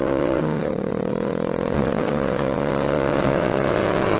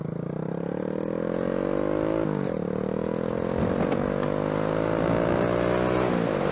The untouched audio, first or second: second